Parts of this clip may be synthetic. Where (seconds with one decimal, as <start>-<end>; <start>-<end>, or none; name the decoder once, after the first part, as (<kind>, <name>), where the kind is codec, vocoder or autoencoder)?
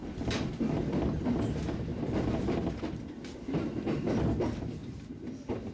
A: 0.0-0.5 (vocoder, BigVGAN v2); 1.9-2.7; 4.8-5.7